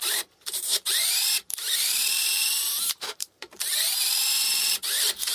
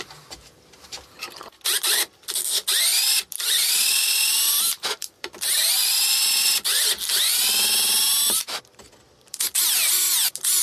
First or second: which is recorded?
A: second